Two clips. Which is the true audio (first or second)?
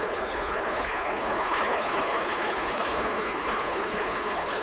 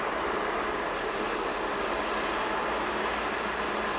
second